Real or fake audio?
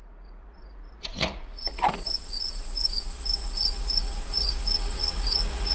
fake